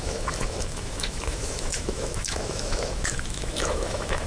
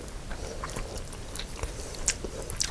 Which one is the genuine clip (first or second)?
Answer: second